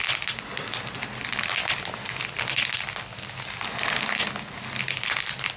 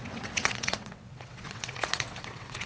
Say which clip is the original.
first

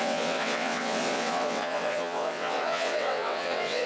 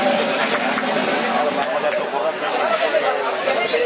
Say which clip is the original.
second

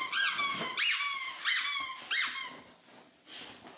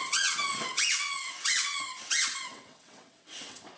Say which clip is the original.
first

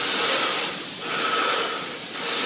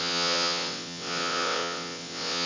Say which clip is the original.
first